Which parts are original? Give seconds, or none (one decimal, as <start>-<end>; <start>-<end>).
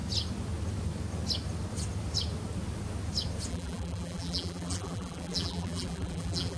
0.0-3.5